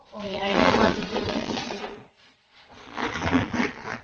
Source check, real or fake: fake